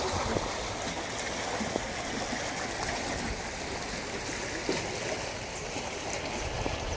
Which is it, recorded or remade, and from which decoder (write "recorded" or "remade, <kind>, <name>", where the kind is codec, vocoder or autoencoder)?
recorded